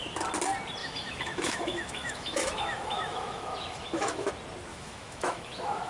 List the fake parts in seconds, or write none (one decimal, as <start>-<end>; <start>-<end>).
0.8-4.3; 4.7-5.9